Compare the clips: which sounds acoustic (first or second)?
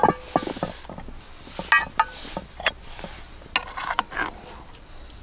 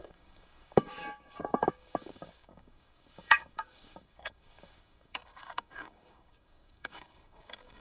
first